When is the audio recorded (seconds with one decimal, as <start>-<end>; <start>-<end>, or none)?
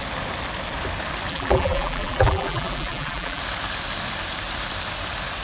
0.0-1.3; 3.4-5.4